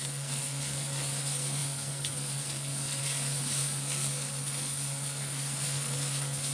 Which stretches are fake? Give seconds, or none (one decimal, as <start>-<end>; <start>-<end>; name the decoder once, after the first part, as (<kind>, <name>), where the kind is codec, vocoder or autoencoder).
0.0-6.5 (codec, SNAC)